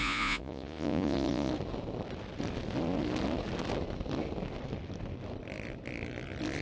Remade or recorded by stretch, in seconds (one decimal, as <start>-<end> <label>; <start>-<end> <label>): 0.0-1.5 remade; 1.5-6.6 recorded